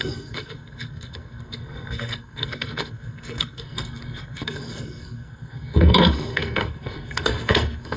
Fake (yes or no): yes